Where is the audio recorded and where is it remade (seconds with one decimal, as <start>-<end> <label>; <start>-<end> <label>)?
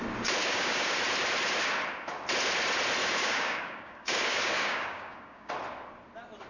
0.0-0.4 recorded; 0.4-1.0 remade; 1.0-3.0 recorded; 3.0-5.5 remade; 5.5-6.5 recorded